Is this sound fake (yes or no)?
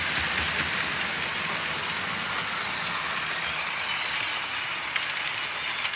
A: no